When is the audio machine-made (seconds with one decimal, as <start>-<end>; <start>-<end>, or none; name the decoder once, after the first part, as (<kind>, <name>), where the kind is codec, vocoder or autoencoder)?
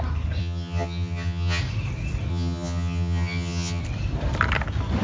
0.4-1.6 (vocoder, HiFi-GAN); 2.3-3.8